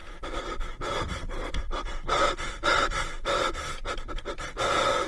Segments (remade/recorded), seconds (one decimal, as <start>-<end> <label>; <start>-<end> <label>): 0.0-5.1 recorded